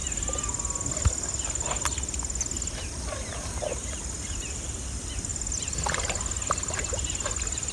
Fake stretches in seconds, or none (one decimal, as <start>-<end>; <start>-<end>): none